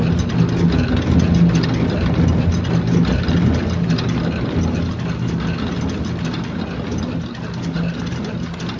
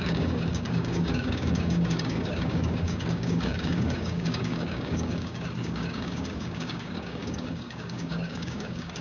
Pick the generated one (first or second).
second